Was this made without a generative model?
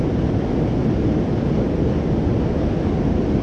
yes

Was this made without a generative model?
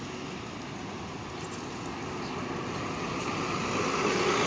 yes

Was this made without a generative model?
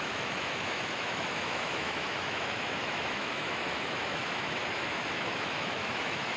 no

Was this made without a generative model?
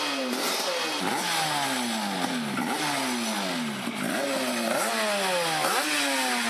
yes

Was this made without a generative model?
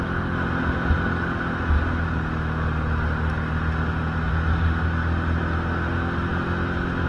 yes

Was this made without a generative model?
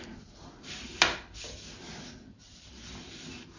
yes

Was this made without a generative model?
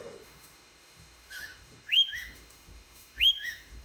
no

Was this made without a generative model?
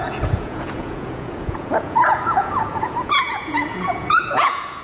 no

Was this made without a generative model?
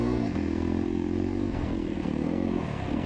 no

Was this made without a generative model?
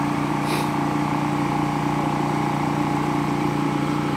no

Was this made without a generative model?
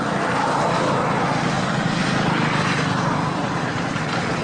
yes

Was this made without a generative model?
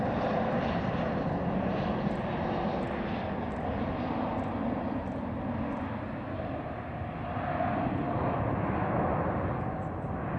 yes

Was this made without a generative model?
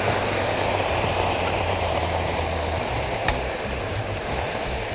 no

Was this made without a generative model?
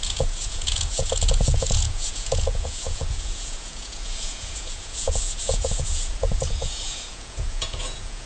no